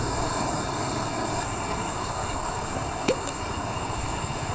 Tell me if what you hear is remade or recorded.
remade